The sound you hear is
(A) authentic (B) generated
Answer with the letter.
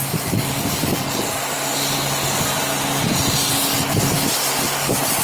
A